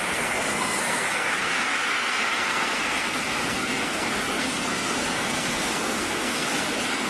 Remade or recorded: remade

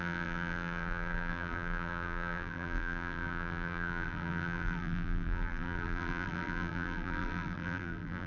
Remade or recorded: remade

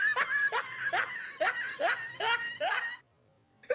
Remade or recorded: recorded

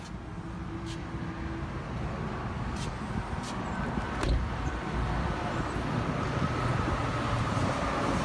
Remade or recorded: recorded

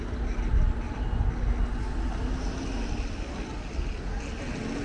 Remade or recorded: recorded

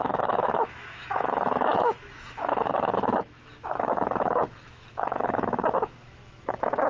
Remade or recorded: remade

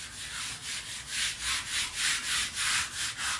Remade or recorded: recorded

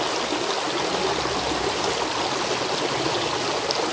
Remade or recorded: recorded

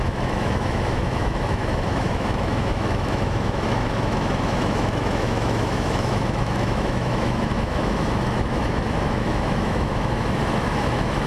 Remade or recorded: remade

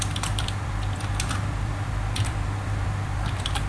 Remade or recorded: remade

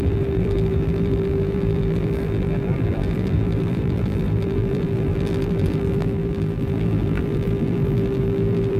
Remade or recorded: remade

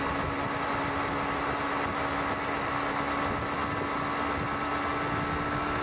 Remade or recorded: recorded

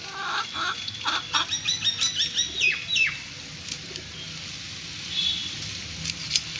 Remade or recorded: recorded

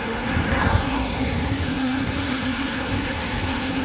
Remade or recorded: remade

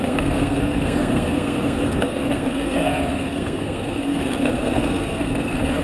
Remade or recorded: remade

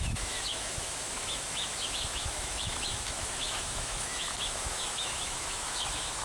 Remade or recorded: remade